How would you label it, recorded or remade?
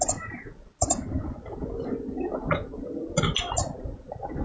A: recorded